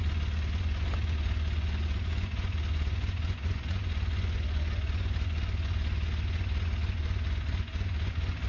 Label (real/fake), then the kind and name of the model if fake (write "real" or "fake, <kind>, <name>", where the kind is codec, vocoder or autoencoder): fake, vocoder, Vocos